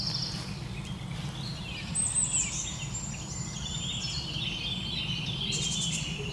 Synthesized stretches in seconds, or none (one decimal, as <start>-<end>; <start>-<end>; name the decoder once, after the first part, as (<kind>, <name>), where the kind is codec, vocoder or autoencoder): none